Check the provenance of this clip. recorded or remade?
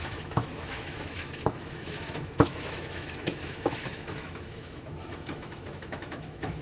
remade